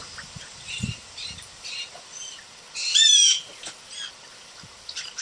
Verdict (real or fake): real